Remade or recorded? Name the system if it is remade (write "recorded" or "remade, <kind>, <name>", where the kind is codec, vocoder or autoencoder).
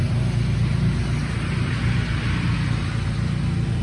recorded